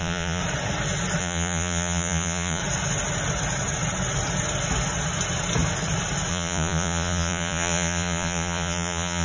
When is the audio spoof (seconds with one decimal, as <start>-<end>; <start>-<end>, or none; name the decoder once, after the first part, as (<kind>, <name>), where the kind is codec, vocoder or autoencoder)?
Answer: 0.0-0.4 (vocoder, Vocos); 1.2-2.6; 6.3-9.2